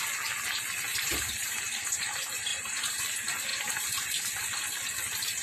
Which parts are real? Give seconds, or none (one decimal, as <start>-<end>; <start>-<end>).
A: 0.0-0.9; 1.6-2.5; 3.0-3.5; 4.2-5.4